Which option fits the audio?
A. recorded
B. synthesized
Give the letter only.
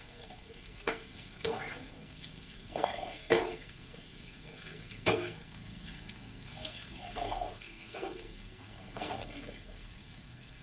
B